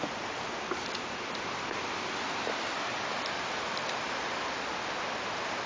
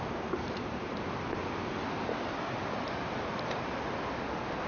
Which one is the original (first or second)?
second